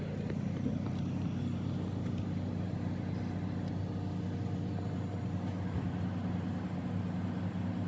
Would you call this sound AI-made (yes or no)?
no